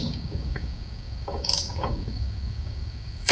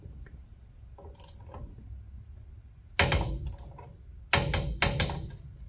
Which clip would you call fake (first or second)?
first